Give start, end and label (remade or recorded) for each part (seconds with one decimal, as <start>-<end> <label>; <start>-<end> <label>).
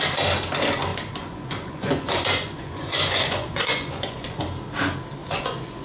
0.0-0.9 recorded; 0.9-4.4 remade; 4.4-5.2 recorded; 5.2-5.8 remade